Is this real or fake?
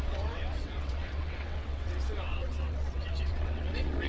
fake